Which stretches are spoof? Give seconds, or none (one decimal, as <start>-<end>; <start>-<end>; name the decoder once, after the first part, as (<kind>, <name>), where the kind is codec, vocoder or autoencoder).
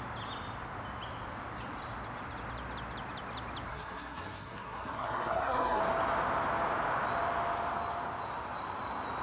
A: 3.7-5.8 (codec, SNAC)